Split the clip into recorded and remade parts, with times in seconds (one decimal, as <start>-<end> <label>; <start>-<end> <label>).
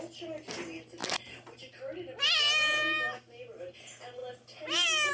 0.0-5.1 recorded